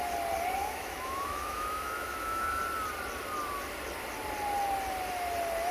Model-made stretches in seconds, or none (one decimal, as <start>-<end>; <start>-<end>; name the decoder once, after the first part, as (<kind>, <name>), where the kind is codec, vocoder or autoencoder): 0.6-2.6 (autoencoder, DAC-VAE)